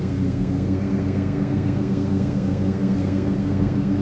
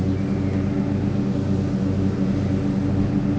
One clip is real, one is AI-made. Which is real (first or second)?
second